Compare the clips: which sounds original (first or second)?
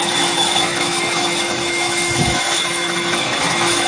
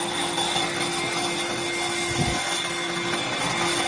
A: second